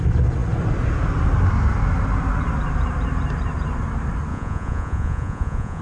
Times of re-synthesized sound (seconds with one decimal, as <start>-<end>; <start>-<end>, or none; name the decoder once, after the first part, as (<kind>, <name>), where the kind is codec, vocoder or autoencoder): 4.3-5.8 (vocoder, Vocos)